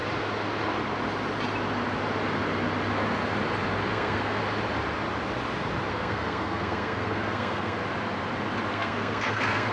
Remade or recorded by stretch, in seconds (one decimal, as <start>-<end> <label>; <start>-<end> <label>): 0.0-3.9 recorded; 3.9-4.4 remade; 4.4-5.9 recorded; 5.9-7.8 remade; 7.8-8.7 recorded; 8.7-9.7 remade